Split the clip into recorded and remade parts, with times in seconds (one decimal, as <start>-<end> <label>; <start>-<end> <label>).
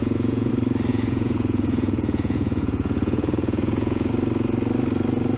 0.0-0.5 remade; 0.5-0.9 recorded; 0.9-4.1 remade; 4.1-5.4 recorded